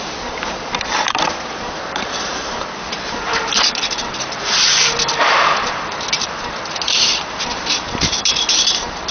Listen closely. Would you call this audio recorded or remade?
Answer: remade